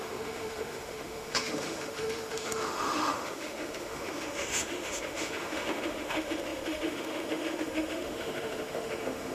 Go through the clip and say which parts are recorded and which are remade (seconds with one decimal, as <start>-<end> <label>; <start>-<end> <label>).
0.0-9.3 remade